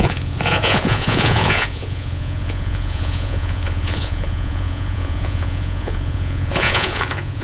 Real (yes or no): no